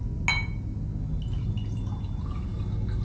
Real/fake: real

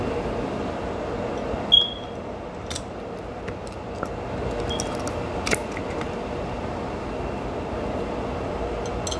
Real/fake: real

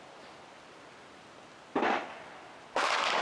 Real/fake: real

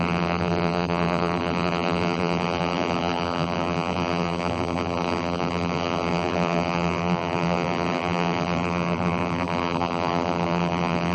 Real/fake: fake